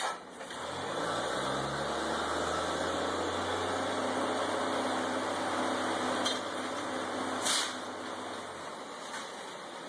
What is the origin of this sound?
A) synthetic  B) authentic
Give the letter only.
B